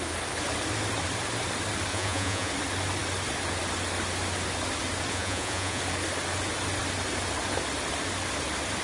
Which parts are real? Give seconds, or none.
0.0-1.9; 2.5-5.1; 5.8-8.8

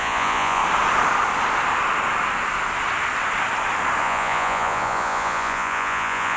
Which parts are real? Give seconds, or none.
0.6-4.0

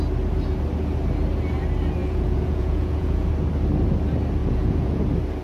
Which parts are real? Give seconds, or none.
0.0-2.0; 3.3-4.4; 5.0-5.4

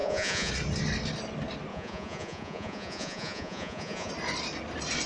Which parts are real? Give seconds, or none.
0.5-1.7; 4.1-5.1

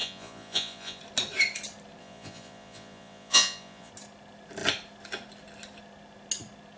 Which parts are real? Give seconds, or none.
1.0-2.0; 3.9-6.8